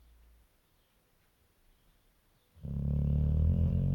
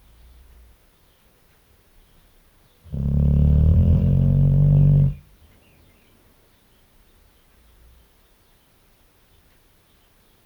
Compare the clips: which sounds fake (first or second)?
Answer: second